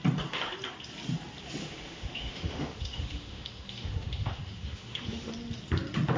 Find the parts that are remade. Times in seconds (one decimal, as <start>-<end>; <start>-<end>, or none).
1.6-5.3

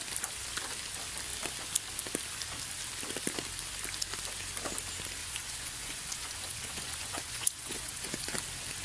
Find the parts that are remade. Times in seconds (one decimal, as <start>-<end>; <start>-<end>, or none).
5.2-8.3

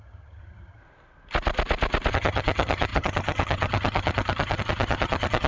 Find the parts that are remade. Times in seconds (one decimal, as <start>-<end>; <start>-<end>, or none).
0.0-0.8; 2.1-5.5

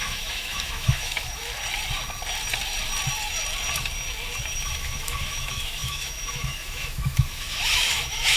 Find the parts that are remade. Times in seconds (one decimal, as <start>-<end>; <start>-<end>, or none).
0.0-1.5; 4.6-8.4

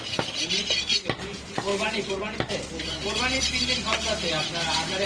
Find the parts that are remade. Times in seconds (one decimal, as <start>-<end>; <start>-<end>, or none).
none

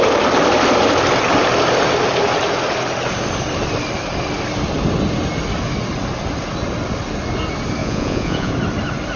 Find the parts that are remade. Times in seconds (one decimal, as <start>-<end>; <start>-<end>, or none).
7.8-8.5